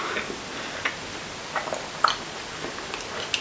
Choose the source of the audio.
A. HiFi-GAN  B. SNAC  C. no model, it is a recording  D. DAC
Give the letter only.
C